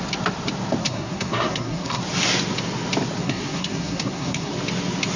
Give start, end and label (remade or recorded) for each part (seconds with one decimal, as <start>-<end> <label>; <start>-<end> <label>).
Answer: 0.0-0.8 recorded; 0.8-2.0 remade; 2.0-3.2 recorded; 3.2-4.5 remade; 4.5-5.2 recorded